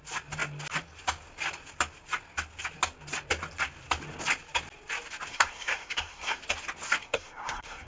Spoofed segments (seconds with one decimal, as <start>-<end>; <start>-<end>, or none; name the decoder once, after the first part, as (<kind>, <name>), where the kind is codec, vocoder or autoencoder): 5.3-6.4 (codec, SNAC); 7.0-7.9